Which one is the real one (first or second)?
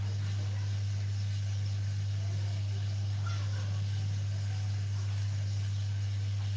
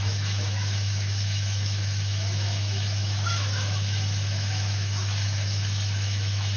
first